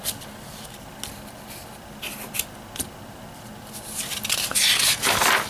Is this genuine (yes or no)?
yes